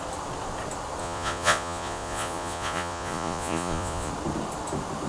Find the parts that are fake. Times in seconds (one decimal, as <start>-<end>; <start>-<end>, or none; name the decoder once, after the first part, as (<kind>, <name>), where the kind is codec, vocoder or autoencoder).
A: 1.0-4.1 (vocoder, Vocos)